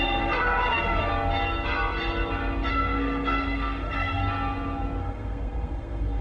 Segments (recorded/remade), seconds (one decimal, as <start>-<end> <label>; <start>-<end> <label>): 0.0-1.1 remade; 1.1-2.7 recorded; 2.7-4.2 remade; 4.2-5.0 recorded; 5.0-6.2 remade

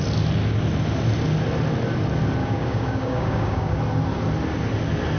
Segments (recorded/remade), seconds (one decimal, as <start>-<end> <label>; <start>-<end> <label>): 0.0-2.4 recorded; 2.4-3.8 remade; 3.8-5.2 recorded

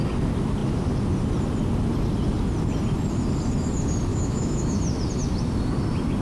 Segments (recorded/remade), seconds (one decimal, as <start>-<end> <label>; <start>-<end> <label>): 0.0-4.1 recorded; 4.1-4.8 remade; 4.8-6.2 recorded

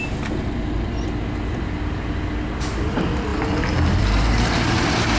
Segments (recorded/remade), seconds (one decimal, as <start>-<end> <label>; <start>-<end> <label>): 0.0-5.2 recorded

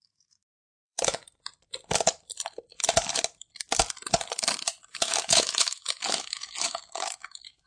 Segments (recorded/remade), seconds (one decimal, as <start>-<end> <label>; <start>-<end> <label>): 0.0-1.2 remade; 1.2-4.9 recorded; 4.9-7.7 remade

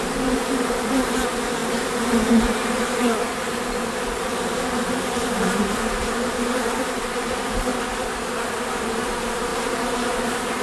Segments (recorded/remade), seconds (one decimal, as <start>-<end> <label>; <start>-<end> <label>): 0.0-7.7 remade; 7.7-8.8 recorded; 8.8-10.6 remade